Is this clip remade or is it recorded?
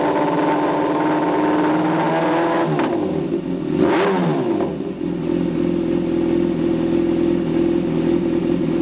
recorded